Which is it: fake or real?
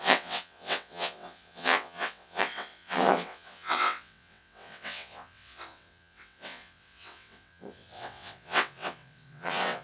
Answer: fake